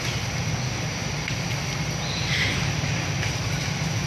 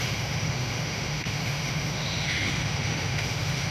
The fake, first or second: second